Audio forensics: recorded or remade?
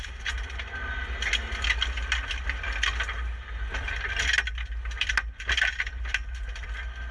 recorded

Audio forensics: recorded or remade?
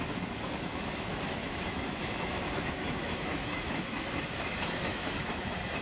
remade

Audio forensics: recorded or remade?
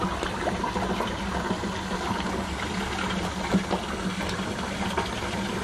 recorded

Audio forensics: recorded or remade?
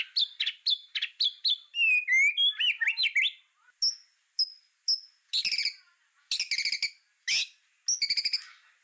recorded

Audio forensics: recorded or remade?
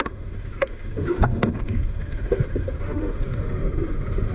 remade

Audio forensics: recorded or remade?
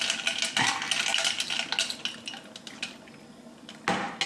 recorded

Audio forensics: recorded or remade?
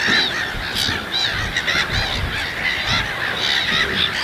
recorded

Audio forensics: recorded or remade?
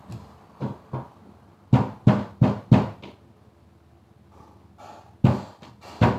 recorded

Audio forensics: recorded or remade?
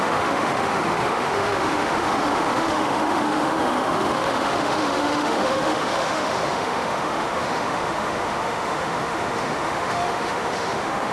remade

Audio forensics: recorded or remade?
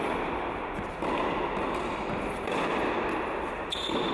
recorded